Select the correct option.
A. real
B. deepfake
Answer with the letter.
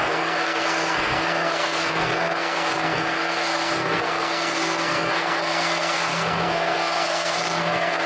B